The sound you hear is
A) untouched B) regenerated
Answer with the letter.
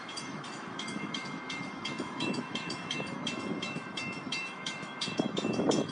B